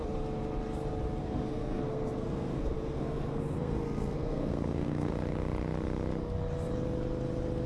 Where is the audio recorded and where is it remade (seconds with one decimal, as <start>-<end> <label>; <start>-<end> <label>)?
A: 0.0-1.2 recorded; 1.2-5.1 remade; 5.1-7.7 recorded